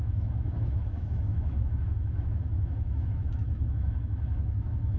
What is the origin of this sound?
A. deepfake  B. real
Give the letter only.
A